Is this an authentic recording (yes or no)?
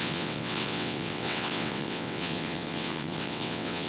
no